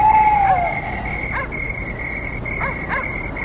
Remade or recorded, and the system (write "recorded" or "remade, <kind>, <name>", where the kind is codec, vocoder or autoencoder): recorded